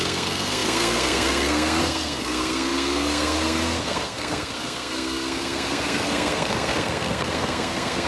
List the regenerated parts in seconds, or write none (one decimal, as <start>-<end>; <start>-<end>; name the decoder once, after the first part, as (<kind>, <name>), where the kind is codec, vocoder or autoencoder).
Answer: 0.0-8.1 (codec, SNAC)